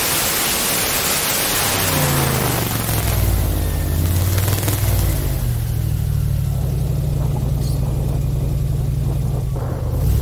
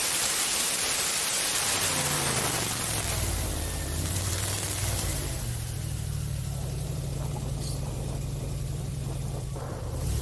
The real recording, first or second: first